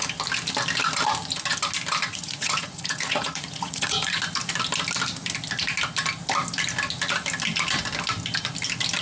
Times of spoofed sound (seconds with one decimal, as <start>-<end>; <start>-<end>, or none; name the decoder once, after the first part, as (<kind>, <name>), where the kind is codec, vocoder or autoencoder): 2.1-4.2 (vocoder, Vocos)